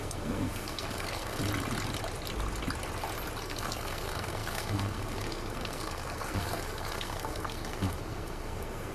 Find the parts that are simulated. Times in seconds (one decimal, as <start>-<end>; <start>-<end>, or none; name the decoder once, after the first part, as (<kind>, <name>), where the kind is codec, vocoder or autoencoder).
0.0-1.4 (codec, SNAC); 3.4-8.9

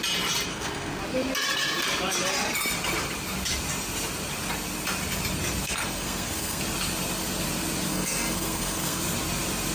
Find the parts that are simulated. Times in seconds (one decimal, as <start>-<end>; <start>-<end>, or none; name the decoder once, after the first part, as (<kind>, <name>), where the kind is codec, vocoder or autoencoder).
0.5-1.0 (codec, SNAC); 5.6-6.6; 7.9-9.0

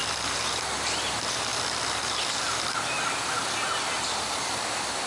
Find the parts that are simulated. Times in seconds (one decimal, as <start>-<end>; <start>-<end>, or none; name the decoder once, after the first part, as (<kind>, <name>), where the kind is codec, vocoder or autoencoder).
none